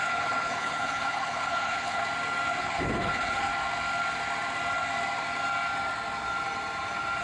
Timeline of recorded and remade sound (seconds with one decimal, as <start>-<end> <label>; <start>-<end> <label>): 0.0-2.0 remade; 2.0-2.6 recorded; 2.6-3.5 remade; 3.5-7.2 recorded